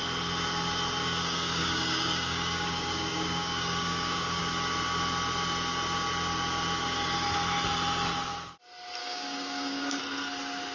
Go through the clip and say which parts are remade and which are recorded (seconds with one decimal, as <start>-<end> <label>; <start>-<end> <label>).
0.0-1.0 recorded; 1.0-4.4 remade; 4.4-9.0 recorded; 9.0-10.0 remade; 10.0-10.7 recorded